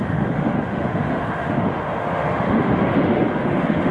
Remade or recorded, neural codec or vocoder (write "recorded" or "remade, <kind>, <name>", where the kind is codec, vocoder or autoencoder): remade, autoencoder, DAC-VAE